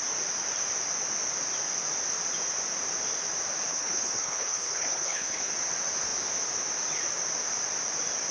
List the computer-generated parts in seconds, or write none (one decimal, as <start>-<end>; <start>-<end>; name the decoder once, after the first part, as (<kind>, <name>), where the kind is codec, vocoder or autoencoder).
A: 3.7-5.5 (codec, HILCodec)